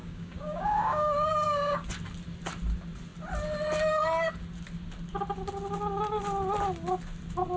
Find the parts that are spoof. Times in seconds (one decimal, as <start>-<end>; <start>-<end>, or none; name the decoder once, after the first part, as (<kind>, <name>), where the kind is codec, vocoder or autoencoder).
0.0-1.9 (codec, DAC)